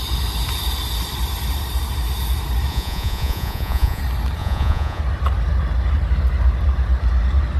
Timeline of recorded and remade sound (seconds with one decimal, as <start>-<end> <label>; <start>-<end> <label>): 0.0-2.7 recorded; 2.7-4.0 remade; 4.0-4.4 recorded; 4.4-5.0 remade; 5.0-7.6 recorded